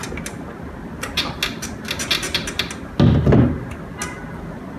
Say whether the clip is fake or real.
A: real